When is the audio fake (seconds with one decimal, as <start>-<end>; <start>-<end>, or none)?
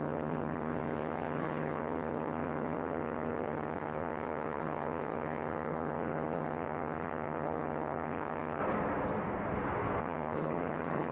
0.0-8.6; 10.0-11.1